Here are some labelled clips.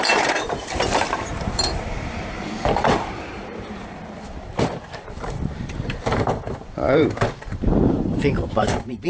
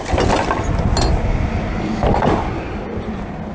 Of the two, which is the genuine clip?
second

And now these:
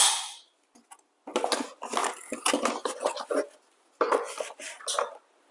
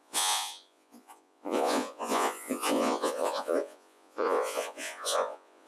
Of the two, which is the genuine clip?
first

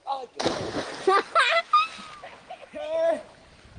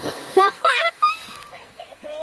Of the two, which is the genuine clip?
first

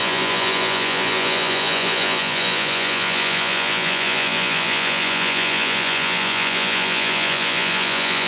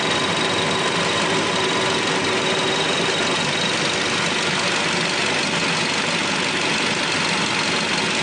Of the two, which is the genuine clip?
second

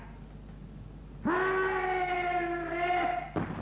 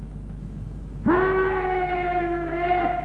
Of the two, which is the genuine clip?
first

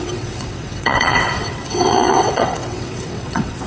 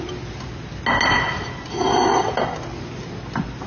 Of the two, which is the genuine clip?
second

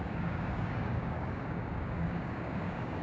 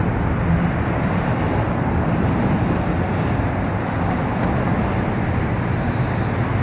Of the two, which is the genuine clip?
second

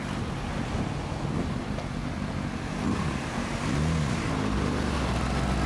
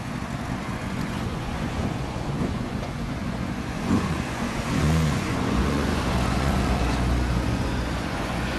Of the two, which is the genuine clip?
first